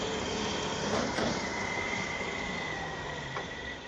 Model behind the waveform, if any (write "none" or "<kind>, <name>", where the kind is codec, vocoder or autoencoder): vocoder, BigVGAN v2